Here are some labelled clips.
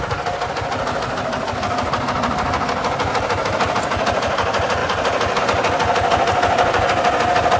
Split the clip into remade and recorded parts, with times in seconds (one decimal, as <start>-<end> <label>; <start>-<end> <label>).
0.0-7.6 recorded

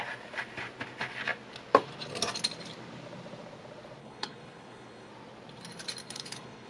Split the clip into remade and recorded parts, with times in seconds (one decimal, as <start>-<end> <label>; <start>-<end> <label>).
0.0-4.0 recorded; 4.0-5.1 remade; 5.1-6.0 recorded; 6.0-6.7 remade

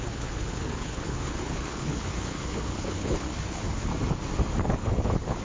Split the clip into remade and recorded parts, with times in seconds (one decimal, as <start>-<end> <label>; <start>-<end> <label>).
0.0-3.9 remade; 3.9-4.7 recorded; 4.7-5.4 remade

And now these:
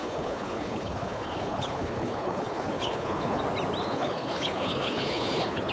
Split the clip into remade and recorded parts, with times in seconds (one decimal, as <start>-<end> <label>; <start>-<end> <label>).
0.0-3.4 remade; 3.4-3.8 recorded; 3.8-5.7 remade

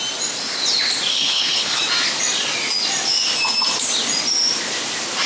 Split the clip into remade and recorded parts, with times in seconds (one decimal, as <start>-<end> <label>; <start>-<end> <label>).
0.0-1.1 recorded; 1.1-1.8 remade; 1.8-5.3 recorded

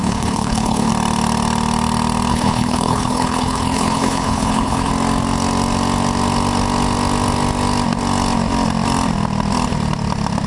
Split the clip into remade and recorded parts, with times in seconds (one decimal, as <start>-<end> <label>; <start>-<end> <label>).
0.0-0.9 remade; 0.9-2.3 recorded; 2.3-4.9 remade; 4.9-10.5 recorded